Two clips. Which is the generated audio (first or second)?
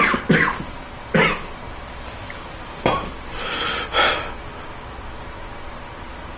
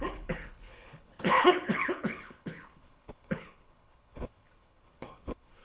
second